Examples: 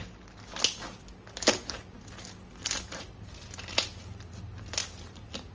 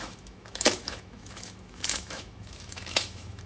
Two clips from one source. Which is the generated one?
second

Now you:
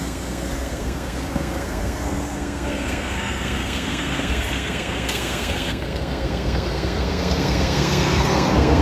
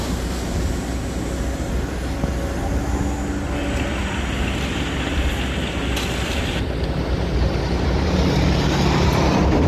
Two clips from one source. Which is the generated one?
first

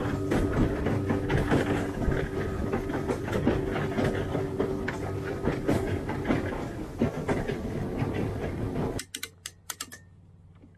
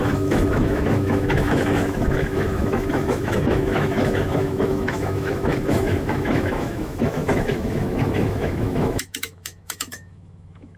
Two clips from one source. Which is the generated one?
second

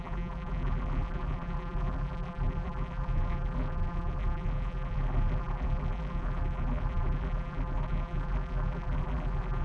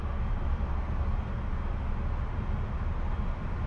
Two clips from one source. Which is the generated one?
first